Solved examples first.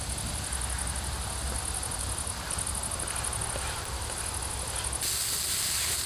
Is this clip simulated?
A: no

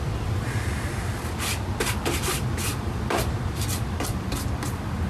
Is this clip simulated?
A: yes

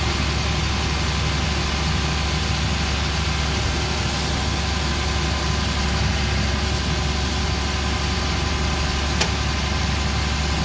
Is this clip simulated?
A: no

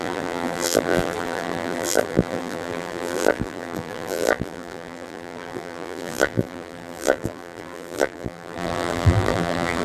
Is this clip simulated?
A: yes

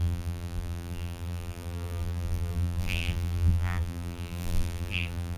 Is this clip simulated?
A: yes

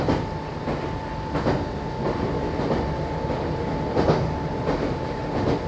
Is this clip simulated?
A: no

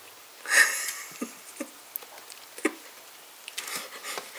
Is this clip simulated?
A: no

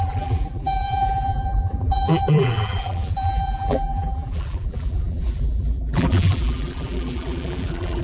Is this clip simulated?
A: yes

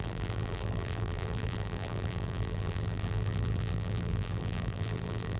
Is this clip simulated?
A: yes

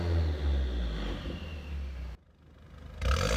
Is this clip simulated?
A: no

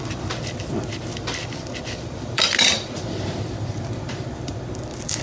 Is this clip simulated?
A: yes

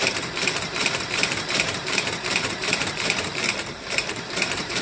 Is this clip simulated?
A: yes